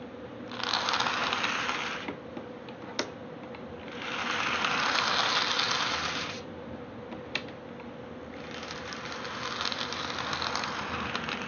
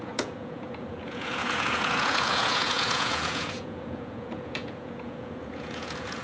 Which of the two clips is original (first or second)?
first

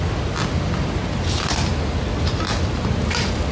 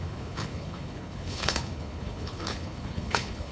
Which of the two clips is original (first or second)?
first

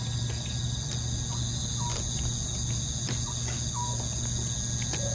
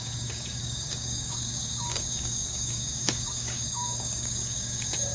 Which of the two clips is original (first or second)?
first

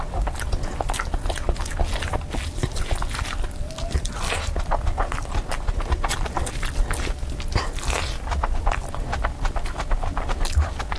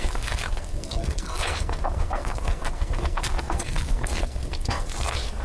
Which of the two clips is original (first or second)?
first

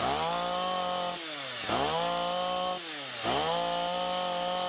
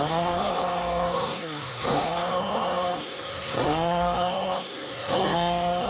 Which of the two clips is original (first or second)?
first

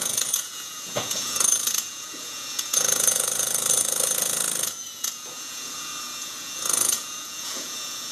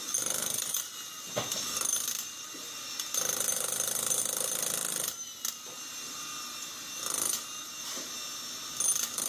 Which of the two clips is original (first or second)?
second